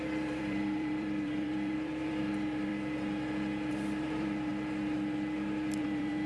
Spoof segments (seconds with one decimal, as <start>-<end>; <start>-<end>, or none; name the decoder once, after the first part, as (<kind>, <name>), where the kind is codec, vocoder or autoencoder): 0.0-2.7 (vocoder, BigVGAN v2); 3.7-4.5; 5.8-6.3